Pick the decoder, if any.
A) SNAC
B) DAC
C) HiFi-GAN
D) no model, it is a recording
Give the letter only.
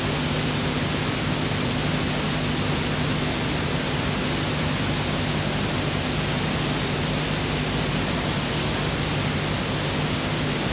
D